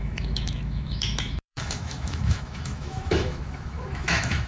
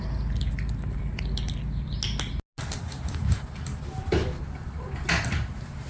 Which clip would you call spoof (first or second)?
first